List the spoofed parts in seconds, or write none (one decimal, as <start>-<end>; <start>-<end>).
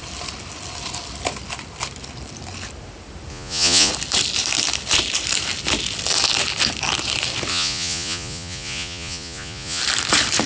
3.3-3.9; 7.5-9.8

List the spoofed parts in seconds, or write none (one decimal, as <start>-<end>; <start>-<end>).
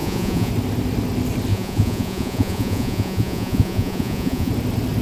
0.0-0.5; 1.5-4.5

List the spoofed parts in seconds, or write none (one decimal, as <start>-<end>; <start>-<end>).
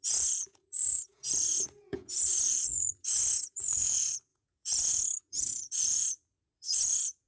0.0-7.3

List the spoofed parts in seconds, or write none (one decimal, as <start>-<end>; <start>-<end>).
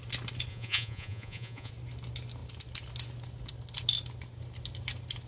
0.5-1.7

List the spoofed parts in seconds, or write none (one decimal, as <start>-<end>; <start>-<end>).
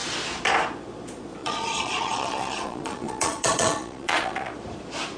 1.4-4.5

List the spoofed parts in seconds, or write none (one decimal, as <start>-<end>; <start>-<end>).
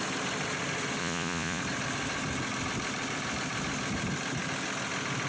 1.0-1.6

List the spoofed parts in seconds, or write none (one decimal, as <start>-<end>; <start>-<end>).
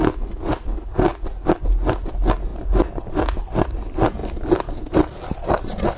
none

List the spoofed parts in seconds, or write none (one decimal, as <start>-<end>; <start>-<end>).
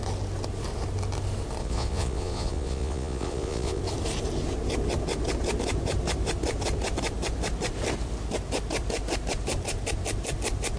1.6-3.8